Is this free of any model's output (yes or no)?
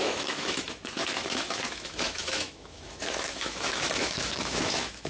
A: no